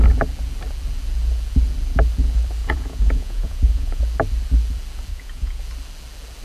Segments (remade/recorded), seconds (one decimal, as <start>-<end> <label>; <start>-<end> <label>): 0.0-2.6 recorded; 2.6-4.0 remade; 4.0-5.1 recorded; 5.1-5.6 remade; 5.6-6.4 recorded